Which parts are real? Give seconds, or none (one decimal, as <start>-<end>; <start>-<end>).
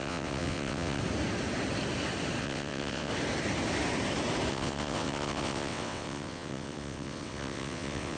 1.0-2.4; 3.1-4.5